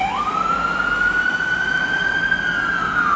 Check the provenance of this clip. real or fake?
real